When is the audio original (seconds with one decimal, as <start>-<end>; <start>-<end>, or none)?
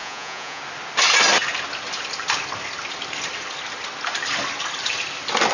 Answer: 0.6-5.5